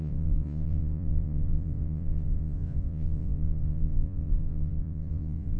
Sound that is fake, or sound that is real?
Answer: fake